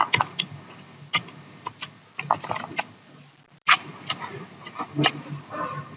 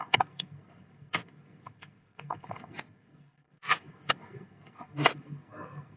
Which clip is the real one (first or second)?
first